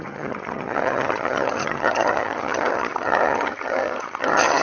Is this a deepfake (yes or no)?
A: yes